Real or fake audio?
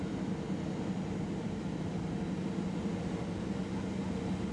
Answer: real